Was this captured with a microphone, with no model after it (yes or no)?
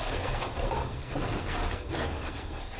no